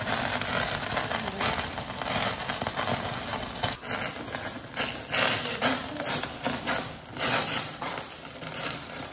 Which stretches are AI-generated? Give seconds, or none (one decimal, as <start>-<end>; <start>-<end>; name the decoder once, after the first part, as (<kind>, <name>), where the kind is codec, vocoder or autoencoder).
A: 0.0-3.3 (vocoder, BigVGAN v2); 5.4-9.1

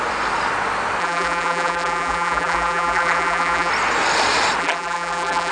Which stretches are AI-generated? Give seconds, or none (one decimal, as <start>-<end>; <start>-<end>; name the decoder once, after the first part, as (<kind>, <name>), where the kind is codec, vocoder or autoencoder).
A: 1.0-3.7 (vocoder, BigVGAN v2); 4.6-5.5

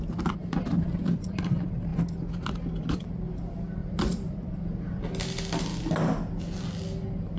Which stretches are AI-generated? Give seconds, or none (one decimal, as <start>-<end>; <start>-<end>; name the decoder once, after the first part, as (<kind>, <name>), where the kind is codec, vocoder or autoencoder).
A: 0.4-1.2 (vocoder, BigVGAN v2); 3.8-4.5

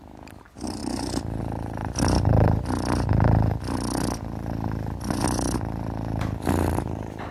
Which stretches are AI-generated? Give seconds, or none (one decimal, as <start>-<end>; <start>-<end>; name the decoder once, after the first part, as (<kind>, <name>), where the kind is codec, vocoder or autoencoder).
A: none